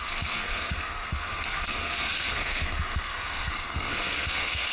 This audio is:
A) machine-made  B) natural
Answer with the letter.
A